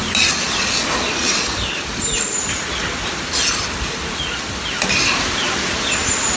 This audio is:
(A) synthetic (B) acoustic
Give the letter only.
B